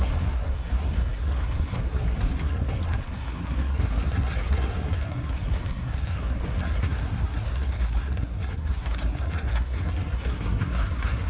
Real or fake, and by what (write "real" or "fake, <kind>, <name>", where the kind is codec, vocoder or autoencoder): fake, codec, SNAC